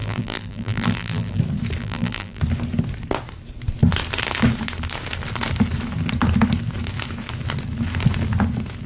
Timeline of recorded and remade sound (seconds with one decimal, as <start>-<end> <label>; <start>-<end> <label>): 0.0-1.4 remade; 1.4-1.8 recorded; 1.8-2.4 remade; 2.4-8.9 recorded